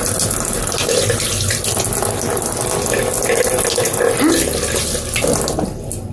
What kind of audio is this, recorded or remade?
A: recorded